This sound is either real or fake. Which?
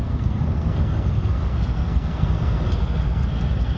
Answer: fake